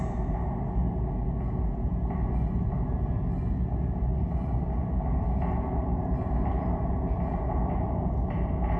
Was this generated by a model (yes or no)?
no